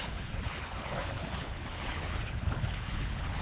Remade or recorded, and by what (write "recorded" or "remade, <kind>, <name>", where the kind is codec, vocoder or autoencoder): remade, codec, HILCodec